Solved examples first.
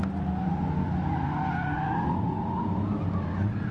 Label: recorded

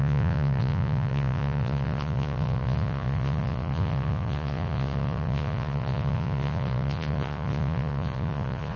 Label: remade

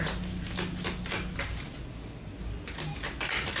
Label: recorded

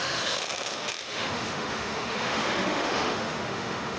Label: remade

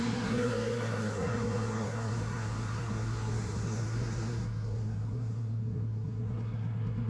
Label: remade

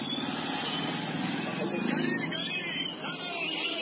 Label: recorded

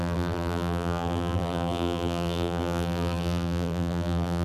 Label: remade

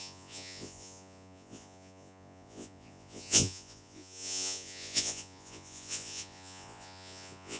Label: remade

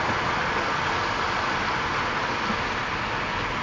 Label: recorded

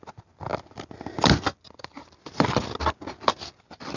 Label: recorded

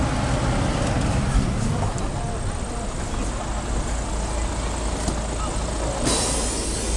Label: recorded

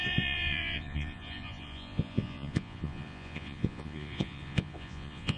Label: remade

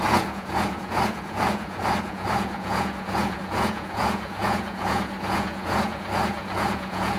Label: remade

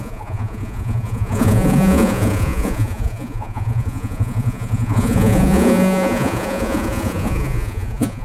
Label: remade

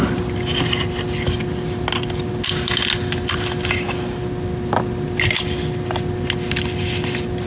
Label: recorded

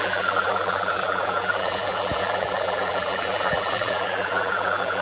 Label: remade